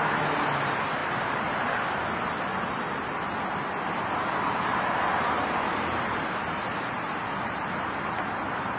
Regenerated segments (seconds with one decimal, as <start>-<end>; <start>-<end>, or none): 1.0-1.5; 5.1-8.8